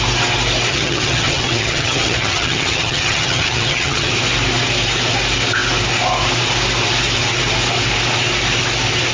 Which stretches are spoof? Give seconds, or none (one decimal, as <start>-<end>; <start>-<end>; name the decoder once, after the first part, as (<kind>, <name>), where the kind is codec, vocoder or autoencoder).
0.7-4.1 (vocoder, HiFi-GAN)